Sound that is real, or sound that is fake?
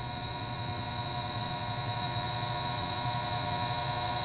fake